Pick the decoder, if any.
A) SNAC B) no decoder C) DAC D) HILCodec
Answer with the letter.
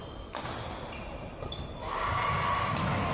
B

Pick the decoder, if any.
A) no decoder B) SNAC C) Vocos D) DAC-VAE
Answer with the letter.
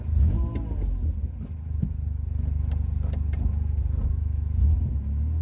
A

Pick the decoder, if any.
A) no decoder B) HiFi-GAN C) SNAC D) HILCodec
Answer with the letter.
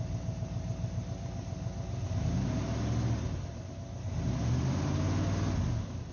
A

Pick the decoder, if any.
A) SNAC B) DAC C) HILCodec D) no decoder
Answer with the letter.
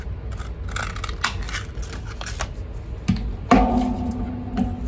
D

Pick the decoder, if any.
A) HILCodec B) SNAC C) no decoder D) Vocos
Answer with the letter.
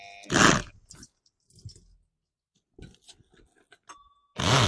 C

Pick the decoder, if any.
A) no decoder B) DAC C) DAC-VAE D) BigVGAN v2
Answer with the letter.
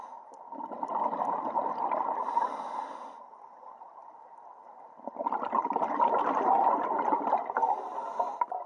A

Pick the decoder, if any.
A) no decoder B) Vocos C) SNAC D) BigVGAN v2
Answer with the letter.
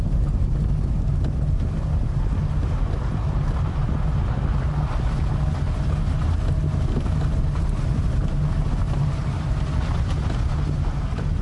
A